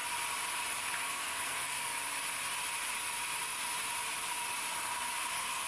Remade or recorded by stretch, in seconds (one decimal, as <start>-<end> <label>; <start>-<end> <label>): 0.0-1.0 recorded; 1.0-1.9 remade; 1.9-5.3 recorded; 5.3-5.7 remade